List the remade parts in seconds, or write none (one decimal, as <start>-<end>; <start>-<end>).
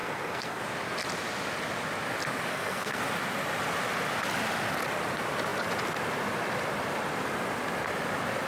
0.0-0.6; 2.5-3.0